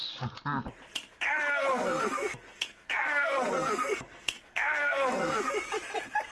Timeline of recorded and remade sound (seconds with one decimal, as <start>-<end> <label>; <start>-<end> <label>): 0.0-1.7 recorded; 1.7-5.5 remade; 5.5-6.3 recorded